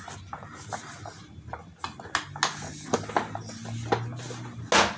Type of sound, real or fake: real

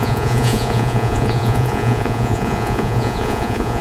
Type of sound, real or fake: fake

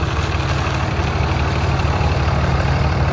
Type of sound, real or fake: real